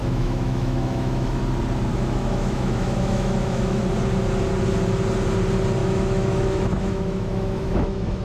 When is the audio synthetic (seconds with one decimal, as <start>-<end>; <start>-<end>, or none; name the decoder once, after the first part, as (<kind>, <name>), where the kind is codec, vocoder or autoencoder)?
0.0-1.4 (autoencoder, DAC-VAE); 1.9-3.8; 5.8-8.2